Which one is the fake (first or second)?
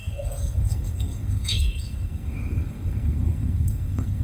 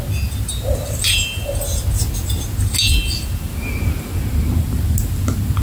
first